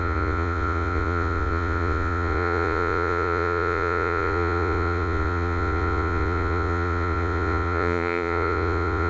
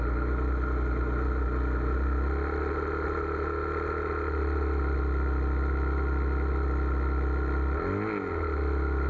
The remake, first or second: first